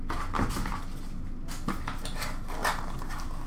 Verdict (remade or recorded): recorded